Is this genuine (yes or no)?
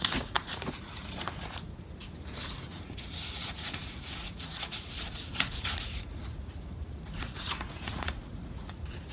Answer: no